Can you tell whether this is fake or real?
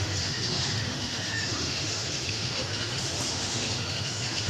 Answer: fake